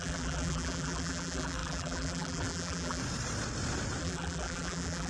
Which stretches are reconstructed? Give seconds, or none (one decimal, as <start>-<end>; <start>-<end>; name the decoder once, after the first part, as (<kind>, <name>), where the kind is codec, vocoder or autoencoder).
0.0-3.0 (vocoder, BigVGAN v2); 4.0-5.1